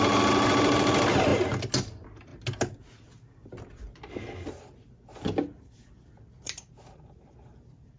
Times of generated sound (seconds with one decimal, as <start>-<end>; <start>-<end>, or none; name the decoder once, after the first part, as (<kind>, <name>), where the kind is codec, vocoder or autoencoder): none